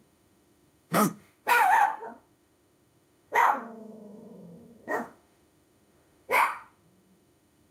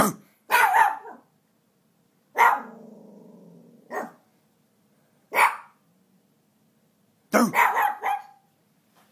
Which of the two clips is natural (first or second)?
second